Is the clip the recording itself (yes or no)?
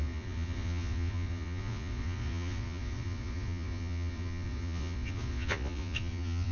no